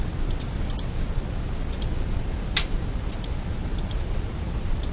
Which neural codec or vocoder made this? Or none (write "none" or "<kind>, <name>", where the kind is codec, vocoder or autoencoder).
none